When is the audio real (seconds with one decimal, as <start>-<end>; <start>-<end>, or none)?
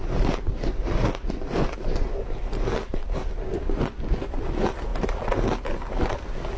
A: 2.9-3.5; 4.9-5.8